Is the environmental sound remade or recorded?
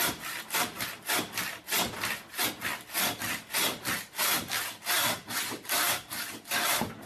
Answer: recorded